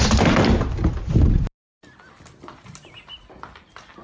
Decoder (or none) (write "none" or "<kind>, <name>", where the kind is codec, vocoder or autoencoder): none